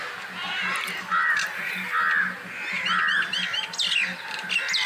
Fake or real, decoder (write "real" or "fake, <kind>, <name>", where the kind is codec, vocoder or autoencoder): real